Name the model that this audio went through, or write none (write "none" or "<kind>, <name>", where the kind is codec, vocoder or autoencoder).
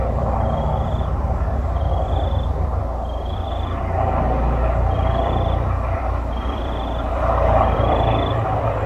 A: vocoder, BigVGAN v2